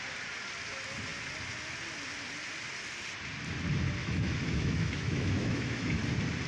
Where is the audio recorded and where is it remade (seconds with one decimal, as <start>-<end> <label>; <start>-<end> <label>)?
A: 0.0-4.0 recorded; 4.0-6.0 remade; 6.0-6.5 recorded